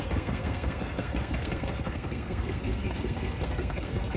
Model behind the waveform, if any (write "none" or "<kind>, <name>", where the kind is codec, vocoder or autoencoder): codec, SNAC